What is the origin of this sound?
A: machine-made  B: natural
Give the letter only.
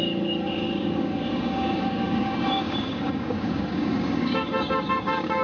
A